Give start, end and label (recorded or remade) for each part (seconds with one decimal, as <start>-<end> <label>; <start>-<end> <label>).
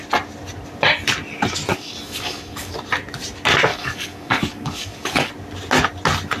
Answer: 0.0-1.7 recorded; 1.7-2.7 remade; 2.7-3.7 recorded; 3.7-5.3 remade; 5.3-6.4 recorded